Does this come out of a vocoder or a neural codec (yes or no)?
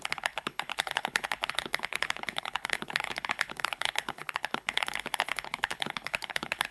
yes